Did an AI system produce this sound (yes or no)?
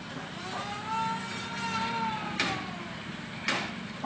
no